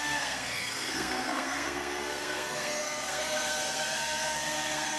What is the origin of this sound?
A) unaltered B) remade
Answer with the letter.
B